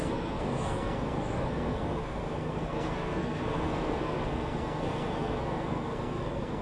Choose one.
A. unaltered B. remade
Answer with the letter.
B